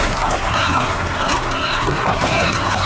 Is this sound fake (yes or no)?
yes